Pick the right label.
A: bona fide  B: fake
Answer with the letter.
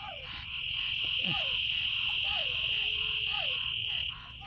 B